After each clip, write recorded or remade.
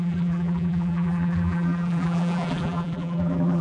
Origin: remade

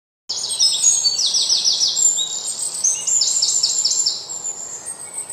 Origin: recorded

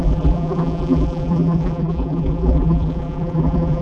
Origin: remade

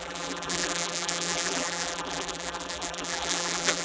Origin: remade